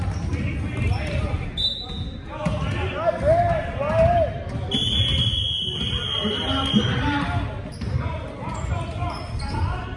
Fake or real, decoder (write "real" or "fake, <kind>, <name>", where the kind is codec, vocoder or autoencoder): real